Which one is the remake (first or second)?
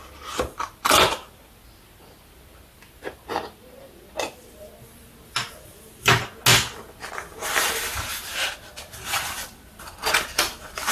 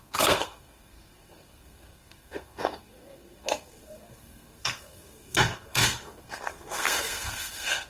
second